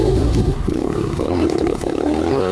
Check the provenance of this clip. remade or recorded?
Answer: remade